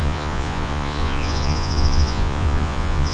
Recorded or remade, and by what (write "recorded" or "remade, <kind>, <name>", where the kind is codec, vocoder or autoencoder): remade, vocoder, Vocos